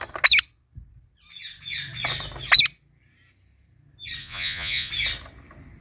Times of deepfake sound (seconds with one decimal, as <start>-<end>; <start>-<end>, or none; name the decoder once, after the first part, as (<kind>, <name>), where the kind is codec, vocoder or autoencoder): 4.2-4.9 (vocoder, Vocos)